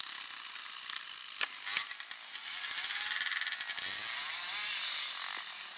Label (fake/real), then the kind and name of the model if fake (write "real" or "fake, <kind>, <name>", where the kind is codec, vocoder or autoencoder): real